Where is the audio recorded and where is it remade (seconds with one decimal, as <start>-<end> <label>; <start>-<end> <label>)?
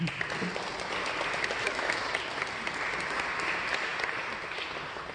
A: 0.0-1.6 recorded; 1.6-2.2 remade; 2.2-5.1 recorded